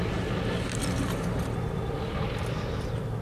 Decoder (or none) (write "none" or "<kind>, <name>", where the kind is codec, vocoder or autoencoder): none